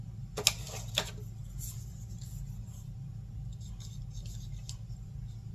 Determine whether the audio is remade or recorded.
recorded